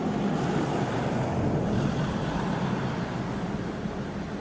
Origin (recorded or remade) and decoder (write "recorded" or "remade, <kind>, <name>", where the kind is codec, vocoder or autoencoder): recorded